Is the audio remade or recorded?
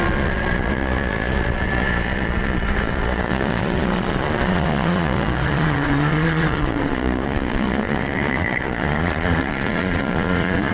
remade